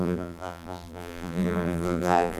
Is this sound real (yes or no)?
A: no